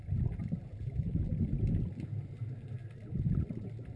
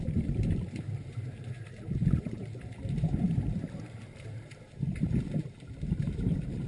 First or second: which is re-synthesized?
second